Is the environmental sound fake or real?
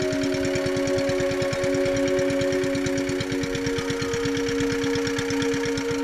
real